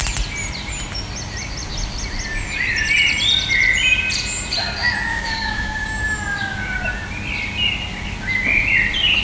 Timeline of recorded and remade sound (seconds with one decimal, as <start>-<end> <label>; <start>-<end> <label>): 0.0-5.1 recorded; 5.1-6.0 remade; 6.0-9.2 recorded